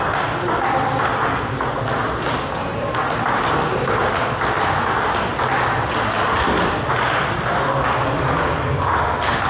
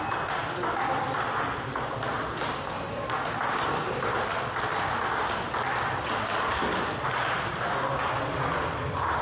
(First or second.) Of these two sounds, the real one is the first